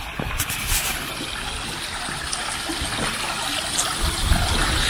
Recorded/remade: recorded